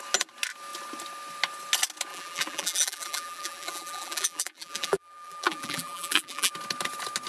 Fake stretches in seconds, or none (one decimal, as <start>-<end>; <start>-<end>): 2.1-6.5